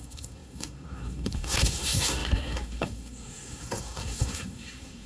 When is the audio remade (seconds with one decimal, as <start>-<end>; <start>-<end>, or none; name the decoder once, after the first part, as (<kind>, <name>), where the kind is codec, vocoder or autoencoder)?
0.0-5.1 (codec, SNAC)